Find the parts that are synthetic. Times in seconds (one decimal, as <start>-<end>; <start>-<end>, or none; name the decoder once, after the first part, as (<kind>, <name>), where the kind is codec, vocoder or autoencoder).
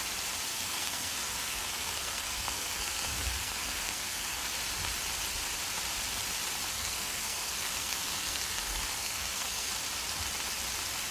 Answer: 0.5-4.5 (codec, SNAC); 6.7-9.7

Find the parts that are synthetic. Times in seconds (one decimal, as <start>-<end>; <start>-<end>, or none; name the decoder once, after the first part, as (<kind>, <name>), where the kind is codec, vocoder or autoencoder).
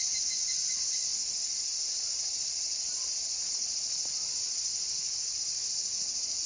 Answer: none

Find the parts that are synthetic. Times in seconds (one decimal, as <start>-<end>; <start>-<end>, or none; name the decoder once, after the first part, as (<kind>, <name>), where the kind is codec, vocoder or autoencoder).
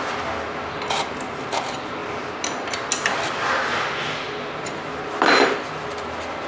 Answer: none